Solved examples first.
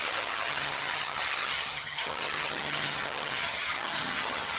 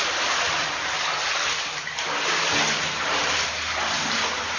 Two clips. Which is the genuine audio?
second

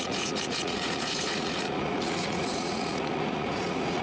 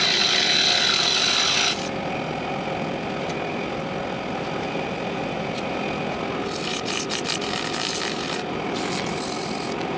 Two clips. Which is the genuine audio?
second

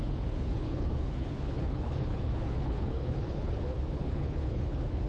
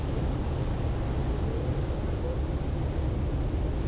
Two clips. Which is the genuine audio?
second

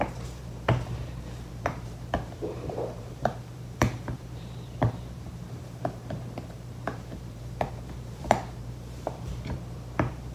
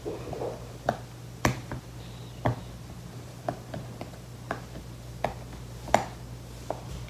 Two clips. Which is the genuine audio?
second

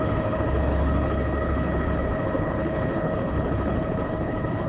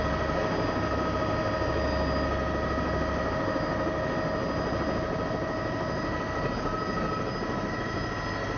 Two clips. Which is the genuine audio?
second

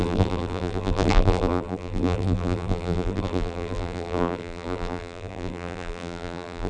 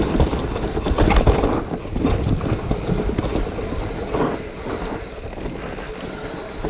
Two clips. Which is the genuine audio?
second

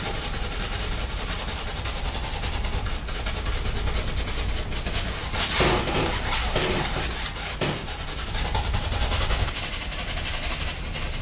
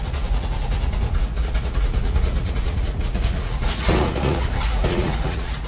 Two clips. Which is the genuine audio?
first